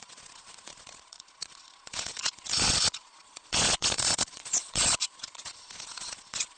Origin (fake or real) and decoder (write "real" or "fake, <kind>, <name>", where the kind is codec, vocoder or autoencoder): fake, vocoder, Vocos